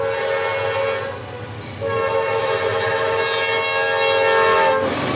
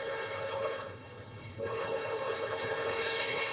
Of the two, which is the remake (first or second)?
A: second